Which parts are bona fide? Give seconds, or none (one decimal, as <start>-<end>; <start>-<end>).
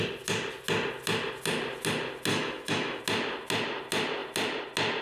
0.0-2.3; 3.0-5.0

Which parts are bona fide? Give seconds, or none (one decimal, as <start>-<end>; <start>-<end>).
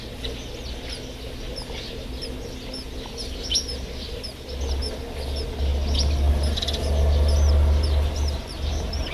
0.0-9.1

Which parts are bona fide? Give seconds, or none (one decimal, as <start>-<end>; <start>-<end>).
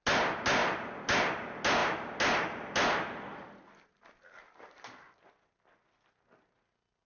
0.0-7.1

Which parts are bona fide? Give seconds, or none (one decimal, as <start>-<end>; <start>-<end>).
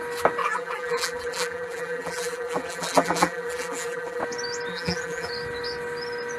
0.0-0.4; 4.2-4.7; 5.3-6.4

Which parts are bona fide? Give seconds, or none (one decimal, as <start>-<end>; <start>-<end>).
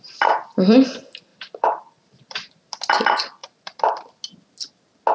0.0-1.3; 2.6-3.4; 4.0-5.1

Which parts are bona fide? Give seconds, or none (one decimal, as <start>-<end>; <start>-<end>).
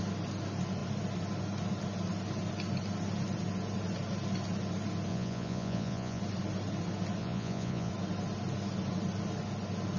0.0-5.1; 6.2-7.2; 7.9-10.0